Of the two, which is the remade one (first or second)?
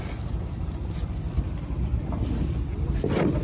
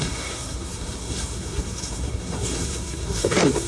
second